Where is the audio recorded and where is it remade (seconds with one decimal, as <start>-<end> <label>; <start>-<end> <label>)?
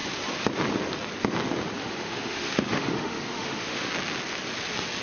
0.0-1.8 recorded; 1.8-3.9 remade; 3.9-5.0 recorded